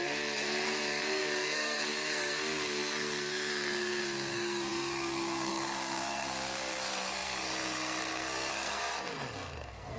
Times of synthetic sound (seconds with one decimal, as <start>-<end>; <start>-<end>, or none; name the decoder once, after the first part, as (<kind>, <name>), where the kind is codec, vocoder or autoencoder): 0.0-10.0 (codec, SNAC)